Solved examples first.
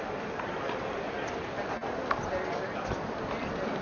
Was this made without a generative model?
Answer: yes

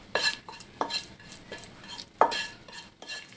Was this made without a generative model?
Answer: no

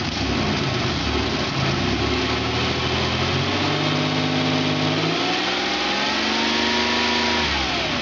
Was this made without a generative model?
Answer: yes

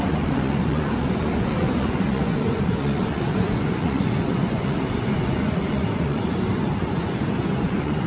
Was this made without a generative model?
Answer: no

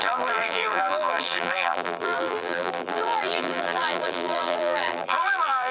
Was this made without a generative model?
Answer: no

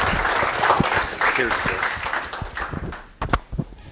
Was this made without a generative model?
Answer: yes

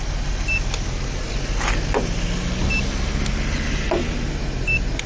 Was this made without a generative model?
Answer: yes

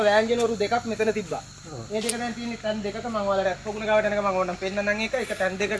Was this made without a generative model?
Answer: yes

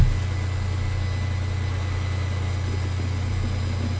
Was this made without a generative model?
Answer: yes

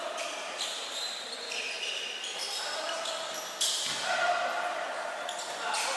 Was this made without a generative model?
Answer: yes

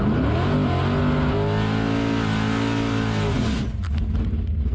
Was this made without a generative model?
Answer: yes